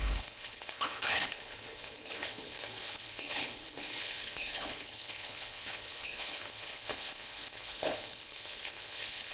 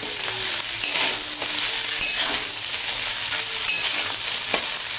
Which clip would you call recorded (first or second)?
second